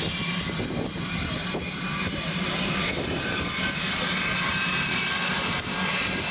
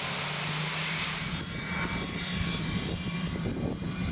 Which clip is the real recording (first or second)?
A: second